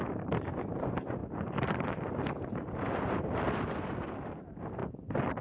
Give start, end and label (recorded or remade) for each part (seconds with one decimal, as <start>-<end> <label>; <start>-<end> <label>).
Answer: 0.0-4.8 remade; 4.8-5.4 recorded